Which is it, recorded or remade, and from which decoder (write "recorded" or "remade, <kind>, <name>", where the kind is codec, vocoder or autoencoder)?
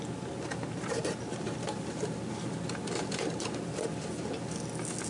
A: recorded